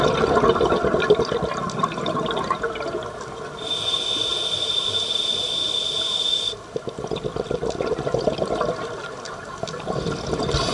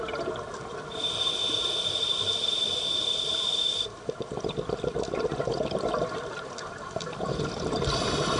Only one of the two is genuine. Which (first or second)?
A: first